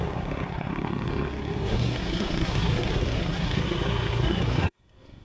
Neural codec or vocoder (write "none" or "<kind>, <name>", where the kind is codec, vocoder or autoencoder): codec, SNAC